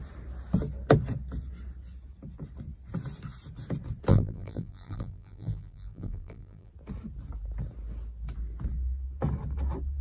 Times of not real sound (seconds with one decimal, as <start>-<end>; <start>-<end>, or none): 4.1-6.7